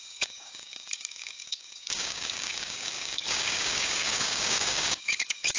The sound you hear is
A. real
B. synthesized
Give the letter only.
B